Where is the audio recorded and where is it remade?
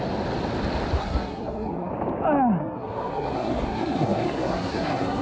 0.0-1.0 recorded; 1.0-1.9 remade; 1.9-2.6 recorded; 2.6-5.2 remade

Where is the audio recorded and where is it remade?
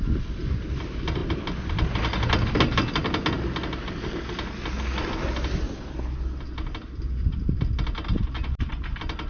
0.0-9.3 recorded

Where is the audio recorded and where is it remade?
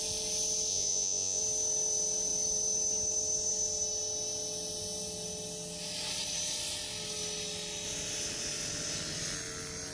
0.0-0.7 recorded; 0.7-1.4 remade; 1.4-9.9 recorded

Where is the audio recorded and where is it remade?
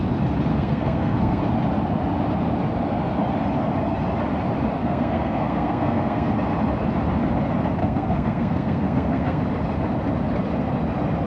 0.0-0.5 recorded; 0.5-1.4 remade; 1.4-4.8 recorded; 4.8-6.3 remade; 6.3-7.8 recorded; 7.8-9.4 remade; 9.4-11.3 recorded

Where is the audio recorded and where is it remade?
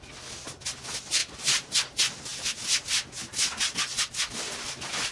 0.0-1.2 recorded; 1.2-1.8 remade; 1.8-5.1 recorded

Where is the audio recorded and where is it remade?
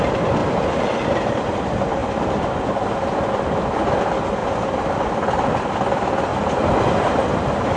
0.0-0.4 recorded; 0.4-1.5 remade; 1.5-4.4 recorded; 4.4-5.1 remade; 5.1-6.3 recorded; 6.3-7.2 remade; 7.2-7.8 recorded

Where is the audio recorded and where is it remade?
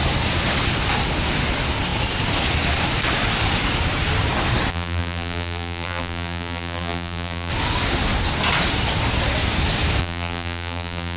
0.0-4.7 recorded; 4.7-7.5 remade; 7.5-10.0 recorded; 10.0-11.2 remade